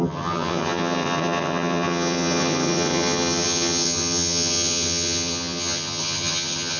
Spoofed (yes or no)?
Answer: yes